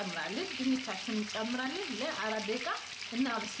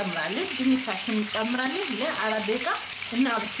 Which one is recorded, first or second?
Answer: first